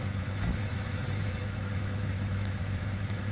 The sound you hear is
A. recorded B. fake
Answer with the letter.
B